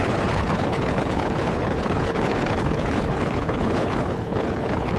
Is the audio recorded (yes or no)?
no